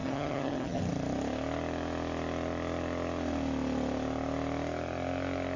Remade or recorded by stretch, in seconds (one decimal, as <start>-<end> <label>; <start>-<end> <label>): 0.0-0.8 remade; 0.8-5.6 recorded